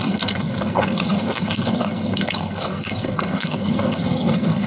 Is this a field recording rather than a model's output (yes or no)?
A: no